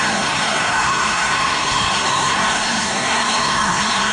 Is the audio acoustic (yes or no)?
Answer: no